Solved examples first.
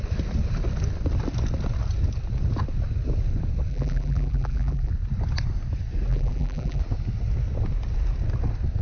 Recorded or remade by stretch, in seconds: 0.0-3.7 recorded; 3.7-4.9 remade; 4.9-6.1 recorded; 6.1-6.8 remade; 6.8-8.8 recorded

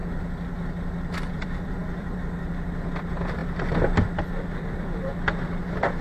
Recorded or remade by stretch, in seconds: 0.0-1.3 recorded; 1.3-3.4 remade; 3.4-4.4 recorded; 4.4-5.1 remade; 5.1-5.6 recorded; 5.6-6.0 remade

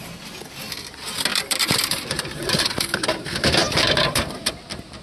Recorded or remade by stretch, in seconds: 0.0-1.3 recorded; 1.3-3.2 remade; 3.2-3.6 recorded; 3.6-4.5 remade; 4.5-5.0 recorded